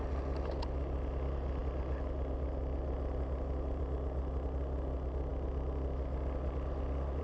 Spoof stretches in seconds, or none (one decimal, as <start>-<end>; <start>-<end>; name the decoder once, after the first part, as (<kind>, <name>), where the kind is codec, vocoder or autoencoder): none

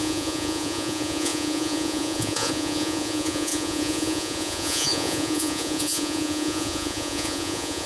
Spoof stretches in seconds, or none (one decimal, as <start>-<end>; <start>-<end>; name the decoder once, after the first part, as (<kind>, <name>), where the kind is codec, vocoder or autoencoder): 0.0-7.9 (vocoder, Vocos)

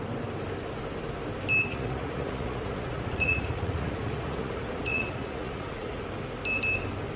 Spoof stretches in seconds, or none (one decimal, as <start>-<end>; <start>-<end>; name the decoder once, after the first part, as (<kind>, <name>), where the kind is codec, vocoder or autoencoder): 1.7-6.0 (vocoder, Vocos)